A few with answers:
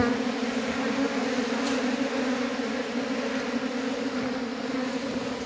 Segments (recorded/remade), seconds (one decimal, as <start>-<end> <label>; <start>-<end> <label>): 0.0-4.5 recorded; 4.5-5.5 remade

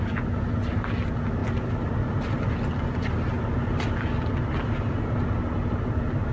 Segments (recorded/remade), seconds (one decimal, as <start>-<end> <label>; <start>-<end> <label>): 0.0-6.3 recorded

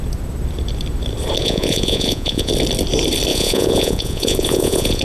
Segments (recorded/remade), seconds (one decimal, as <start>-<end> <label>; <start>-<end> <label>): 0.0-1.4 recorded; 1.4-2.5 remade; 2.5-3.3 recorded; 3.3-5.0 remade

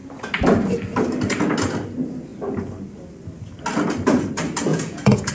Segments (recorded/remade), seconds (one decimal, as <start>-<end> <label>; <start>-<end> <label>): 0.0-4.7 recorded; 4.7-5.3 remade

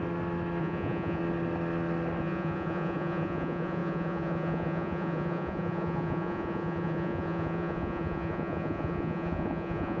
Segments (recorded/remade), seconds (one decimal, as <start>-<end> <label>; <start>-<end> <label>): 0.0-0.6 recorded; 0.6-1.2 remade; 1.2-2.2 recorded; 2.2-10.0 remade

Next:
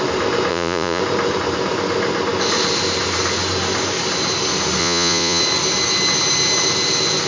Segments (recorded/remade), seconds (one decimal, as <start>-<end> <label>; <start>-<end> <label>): 0.0-0.5 recorded; 0.5-1.0 remade; 1.0-4.8 recorded; 4.8-5.4 remade; 5.4-7.3 recorded